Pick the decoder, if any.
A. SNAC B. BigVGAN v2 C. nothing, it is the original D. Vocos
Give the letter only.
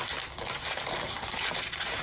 C